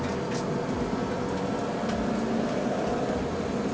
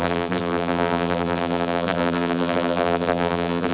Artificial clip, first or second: second